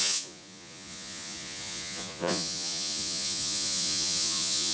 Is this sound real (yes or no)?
no